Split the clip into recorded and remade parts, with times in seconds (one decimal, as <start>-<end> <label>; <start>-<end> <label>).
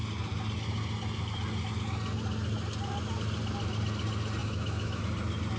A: 0.0-4.4 recorded; 4.4-5.0 remade; 5.0-5.6 recorded